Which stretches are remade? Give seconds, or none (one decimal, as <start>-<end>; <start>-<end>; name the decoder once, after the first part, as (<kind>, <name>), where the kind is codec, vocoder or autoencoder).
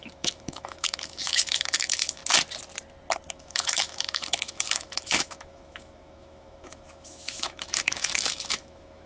0.0-2.2 (autoencoder, DAC-VAE); 3.3-9.1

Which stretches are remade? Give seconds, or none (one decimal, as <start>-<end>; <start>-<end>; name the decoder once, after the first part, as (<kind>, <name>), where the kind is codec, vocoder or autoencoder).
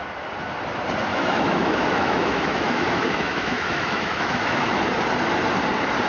1.1-4.8 (autoencoder, DAC-VAE)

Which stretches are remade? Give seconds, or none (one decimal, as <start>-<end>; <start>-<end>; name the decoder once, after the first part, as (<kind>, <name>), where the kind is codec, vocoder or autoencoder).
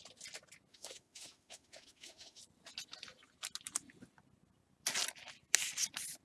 0.7-2.4 (autoencoder, DAC-VAE)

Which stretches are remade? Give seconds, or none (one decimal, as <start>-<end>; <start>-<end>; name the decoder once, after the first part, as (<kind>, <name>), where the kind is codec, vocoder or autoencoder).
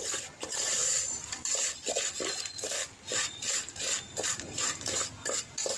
0.8-1.7 (vocoder, BigVGAN v2)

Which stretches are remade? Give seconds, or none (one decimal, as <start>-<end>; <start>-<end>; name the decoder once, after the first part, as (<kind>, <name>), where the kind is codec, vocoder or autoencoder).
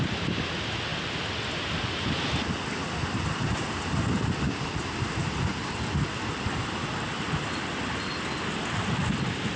none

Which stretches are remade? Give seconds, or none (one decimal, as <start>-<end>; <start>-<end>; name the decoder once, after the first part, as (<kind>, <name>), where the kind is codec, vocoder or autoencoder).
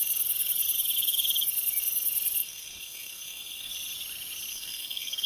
2.4-3.7 (codec, SNAC); 4.5-5.3